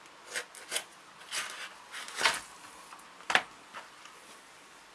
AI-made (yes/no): no